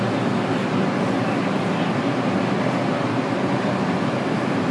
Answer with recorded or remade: recorded